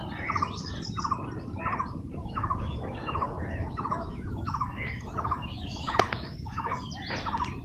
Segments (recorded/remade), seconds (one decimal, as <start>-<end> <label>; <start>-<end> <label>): 0.0-2.2 recorded; 2.2-6.8 remade; 6.8-7.6 recorded